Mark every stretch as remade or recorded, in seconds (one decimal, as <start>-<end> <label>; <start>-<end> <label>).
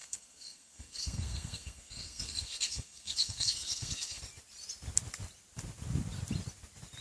0.0-4.2 remade; 4.2-7.0 recorded